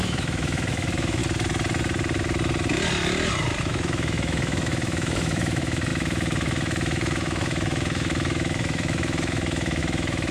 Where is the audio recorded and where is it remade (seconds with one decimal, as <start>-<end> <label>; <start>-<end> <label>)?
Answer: 0.0-1.2 remade; 1.2-3.6 recorded; 3.6-10.3 remade